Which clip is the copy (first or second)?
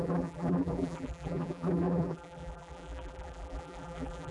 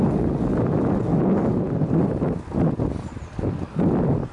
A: first